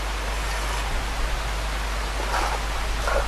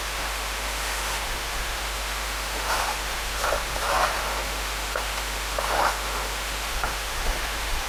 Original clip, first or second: first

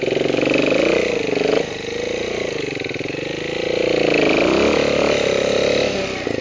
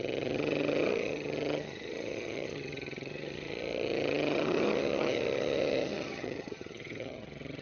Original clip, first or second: first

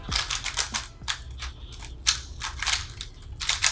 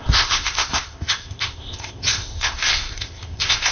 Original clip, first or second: first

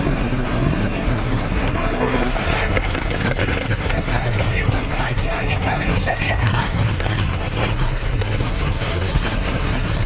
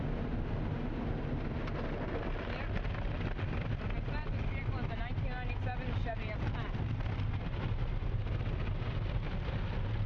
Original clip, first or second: second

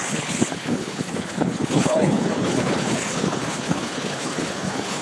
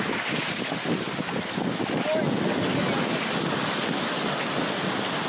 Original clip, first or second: second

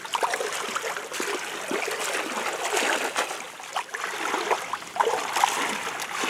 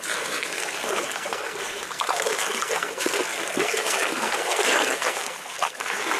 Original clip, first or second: first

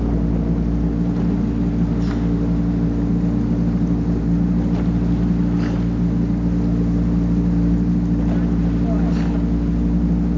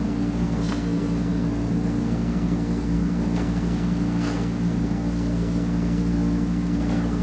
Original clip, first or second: first